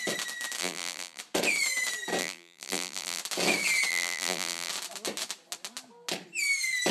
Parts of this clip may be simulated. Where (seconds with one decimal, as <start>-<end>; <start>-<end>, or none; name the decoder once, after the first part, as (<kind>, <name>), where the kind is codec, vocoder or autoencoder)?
0.6-1.2 (vocoder, BigVGAN v2); 2.2-3.2; 3.9-4.7